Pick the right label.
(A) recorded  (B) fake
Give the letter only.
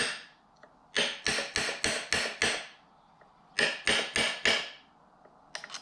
A